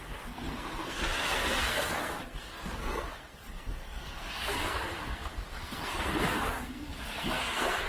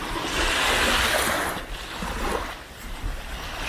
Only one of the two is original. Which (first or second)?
second